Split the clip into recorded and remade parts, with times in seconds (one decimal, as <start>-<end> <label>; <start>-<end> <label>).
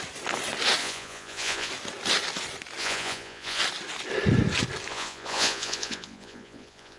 0.0-0.8 recorded; 0.8-1.7 remade; 1.7-2.8 recorded; 2.8-3.6 remade; 3.6-4.9 recorded; 4.9-7.0 remade